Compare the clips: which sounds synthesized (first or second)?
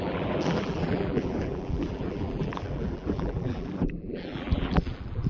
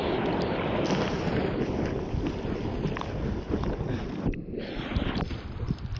first